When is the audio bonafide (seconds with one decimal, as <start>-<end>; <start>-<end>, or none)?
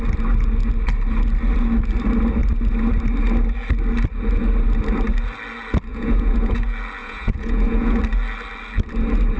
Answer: 0.0-5.9; 6.6-7.0; 8.0-9.4